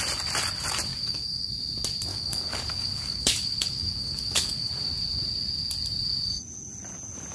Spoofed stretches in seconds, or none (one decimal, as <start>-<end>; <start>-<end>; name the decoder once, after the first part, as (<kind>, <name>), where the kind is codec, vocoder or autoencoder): 0.9-1.5 (codec, DAC); 2.1-4.7